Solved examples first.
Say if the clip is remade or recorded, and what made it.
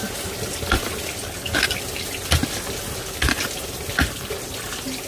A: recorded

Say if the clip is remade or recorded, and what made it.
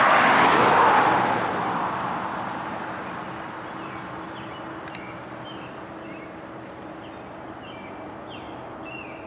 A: recorded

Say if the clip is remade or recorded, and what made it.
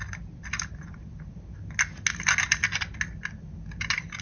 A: recorded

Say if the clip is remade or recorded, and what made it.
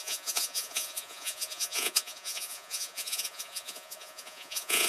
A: remade, vocoder, Vocos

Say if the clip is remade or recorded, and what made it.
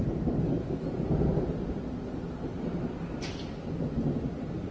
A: recorded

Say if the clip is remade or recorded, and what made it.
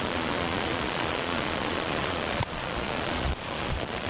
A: remade, vocoder, Vocos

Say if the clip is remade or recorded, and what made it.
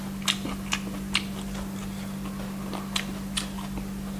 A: recorded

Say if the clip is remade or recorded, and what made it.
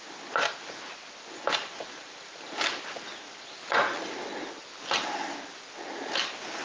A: recorded